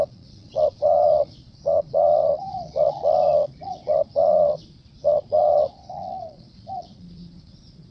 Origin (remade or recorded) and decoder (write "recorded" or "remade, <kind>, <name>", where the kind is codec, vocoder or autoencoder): remade, vocoder, Vocos